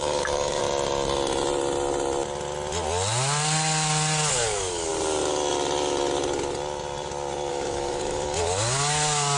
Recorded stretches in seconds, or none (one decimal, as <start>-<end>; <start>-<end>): 0.6-4.3; 4.9-7.5